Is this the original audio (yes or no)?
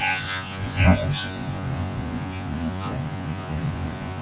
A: no